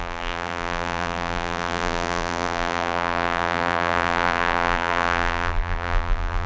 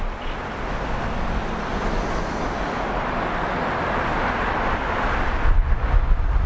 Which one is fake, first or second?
first